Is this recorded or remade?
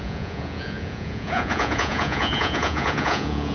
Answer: remade